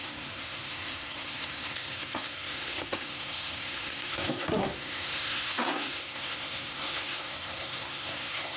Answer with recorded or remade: remade